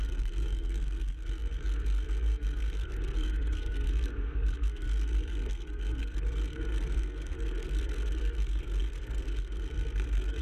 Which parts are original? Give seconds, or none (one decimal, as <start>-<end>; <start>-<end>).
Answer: none